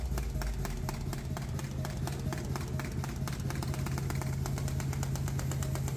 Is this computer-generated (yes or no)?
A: no